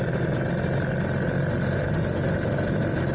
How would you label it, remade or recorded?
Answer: recorded